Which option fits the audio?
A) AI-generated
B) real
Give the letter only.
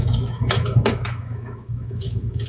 A